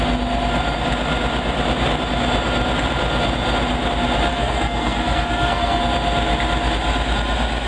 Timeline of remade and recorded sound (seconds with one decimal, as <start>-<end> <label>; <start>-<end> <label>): 0.0-4.3 recorded; 4.3-5.8 remade; 5.8-7.7 recorded